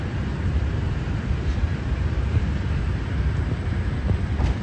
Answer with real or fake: fake